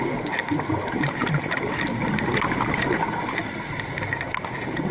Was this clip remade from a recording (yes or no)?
no